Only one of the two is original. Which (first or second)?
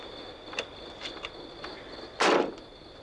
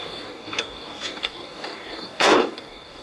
first